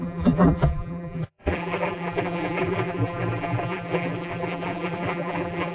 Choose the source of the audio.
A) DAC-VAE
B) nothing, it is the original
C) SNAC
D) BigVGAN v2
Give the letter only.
D